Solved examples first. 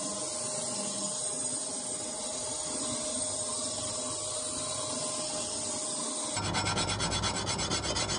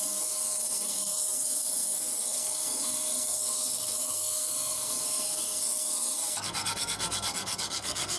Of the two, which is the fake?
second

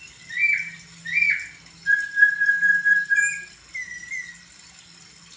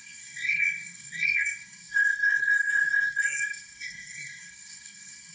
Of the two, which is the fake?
second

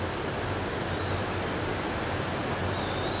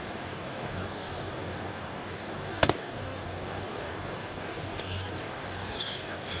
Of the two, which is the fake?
second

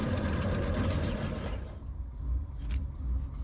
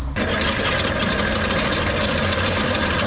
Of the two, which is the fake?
first